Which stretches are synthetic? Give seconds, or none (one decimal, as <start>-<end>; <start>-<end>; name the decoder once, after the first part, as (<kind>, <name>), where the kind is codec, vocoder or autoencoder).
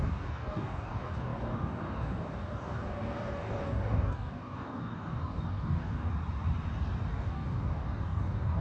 0.0-6.1 (codec, DAC); 7.2-8.6